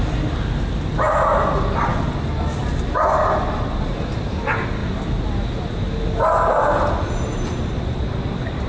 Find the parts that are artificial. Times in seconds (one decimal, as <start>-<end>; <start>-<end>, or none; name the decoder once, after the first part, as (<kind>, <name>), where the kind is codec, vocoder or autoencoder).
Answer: none